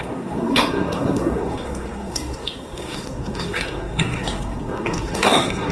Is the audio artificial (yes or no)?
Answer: yes